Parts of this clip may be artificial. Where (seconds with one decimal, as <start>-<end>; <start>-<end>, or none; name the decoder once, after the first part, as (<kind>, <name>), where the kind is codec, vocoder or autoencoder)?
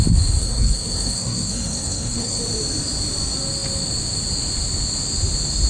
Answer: 0.4-2.4 (codec, SNAC)